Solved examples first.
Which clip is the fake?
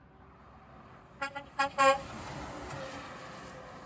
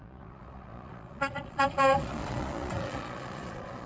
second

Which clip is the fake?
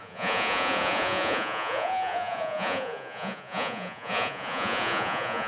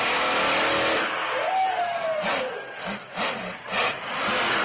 first